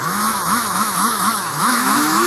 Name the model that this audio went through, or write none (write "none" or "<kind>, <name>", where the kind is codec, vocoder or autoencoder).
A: autoencoder, DAC-VAE